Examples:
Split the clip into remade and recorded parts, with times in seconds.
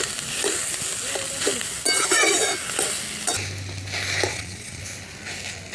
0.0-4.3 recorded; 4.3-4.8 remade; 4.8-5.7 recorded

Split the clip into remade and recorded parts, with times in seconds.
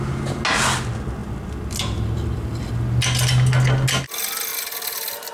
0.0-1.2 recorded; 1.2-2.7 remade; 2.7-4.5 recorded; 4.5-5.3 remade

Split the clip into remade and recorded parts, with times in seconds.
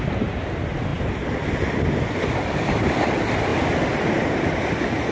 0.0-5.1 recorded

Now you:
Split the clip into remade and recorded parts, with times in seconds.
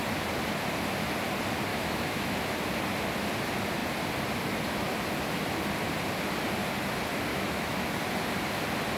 0.0-1.7 recorded; 1.7-2.5 remade; 2.5-7.3 recorded; 7.3-7.9 remade; 7.9-9.0 recorded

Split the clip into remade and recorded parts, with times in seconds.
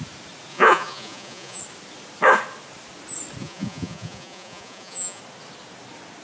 0.0-0.5 recorded; 0.5-1.6 remade; 1.6-3.4 recorded; 3.4-5.2 remade; 5.2-6.2 recorded